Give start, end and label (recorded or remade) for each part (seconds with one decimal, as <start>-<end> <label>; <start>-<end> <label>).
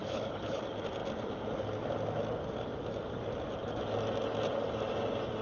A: 0.0-0.6 remade; 0.6-5.4 recorded